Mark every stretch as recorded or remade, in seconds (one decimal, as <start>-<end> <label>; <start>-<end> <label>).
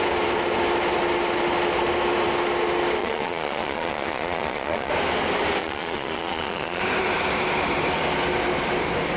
0.0-3.0 recorded; 3.0-4.9 remade; 4.9-5.6 recorded; 5.6-6.8 remade; 6.8-9.2 recorded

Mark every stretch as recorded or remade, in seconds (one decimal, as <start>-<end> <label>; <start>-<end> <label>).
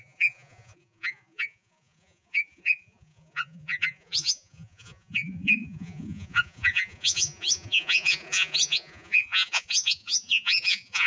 0.0-11.1 remade